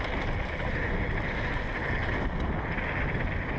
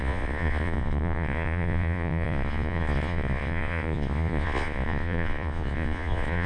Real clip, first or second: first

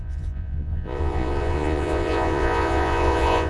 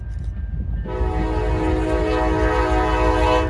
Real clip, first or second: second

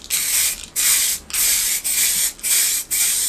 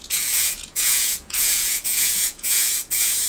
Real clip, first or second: first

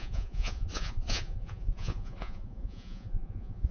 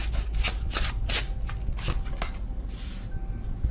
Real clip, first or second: second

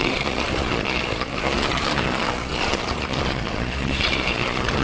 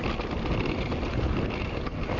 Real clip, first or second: second